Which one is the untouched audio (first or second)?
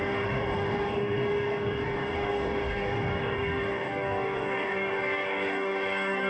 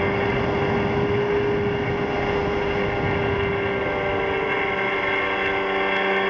second